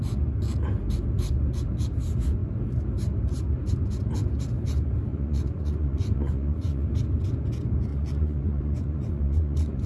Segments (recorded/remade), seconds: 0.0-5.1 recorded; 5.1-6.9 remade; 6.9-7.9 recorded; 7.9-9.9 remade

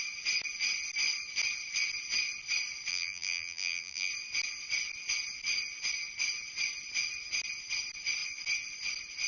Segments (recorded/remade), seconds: 0.0-2.9 recorded; 2.9-4.1 remade; 4.1-9.3 recorded

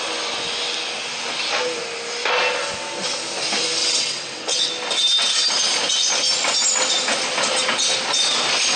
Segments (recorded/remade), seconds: 0.0-3.8 recorded; 3.8-4.7 remade; 4.7-8.8 recorded

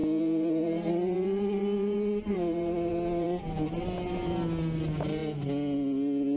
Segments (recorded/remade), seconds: 0.0-3.8 remade; 3.8-6.4 recorded

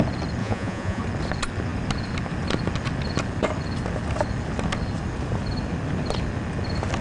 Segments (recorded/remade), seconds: 0.0-0.4 recorded; 0.4-1.0 remade; 1.0-7.0 recorded

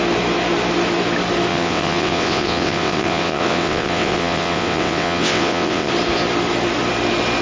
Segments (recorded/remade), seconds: 0.0-1.5 recorded; 1.5-5.9 remade; 5.9-7.4 recorded

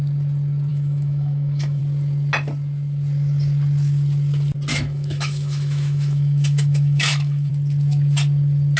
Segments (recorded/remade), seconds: 0.0-0.7 recorded; 0.7-1.8 remade; 1.8-4.7 recorded; 4.7-7.5 remade; 7.5-8.8 recorded

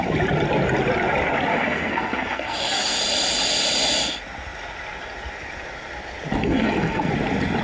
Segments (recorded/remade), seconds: 0.0-1.5 recorded; 1.5-3.0 remade; 3.0-6.4 recorded; 6.4-7.1 remade; 7.1-7.6 recorded